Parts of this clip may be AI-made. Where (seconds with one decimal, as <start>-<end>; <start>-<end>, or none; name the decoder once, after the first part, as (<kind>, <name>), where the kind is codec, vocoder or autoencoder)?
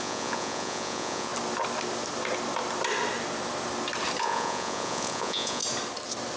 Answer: 0.0-1.3 (vocoder, Vocos); 4.2-5.6